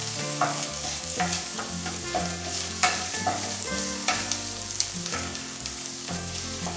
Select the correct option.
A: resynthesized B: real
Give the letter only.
A